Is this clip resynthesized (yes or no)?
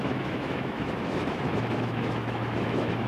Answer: yes